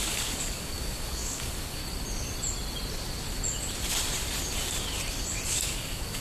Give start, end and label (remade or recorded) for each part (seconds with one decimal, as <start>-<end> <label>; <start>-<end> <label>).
0.0-1.8 remade; 1.8-5.5 recorded; 5.5-6.2 remade